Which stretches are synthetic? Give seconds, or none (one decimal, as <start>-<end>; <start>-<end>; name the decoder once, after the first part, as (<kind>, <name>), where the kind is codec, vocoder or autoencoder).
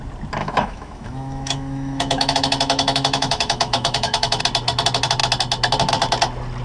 0.4-4.4 (autoencoder, DAC-VAE)